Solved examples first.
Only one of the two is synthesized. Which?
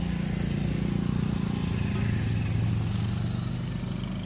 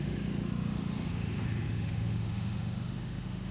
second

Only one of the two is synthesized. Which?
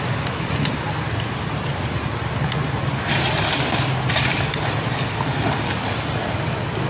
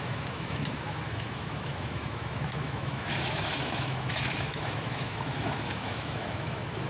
second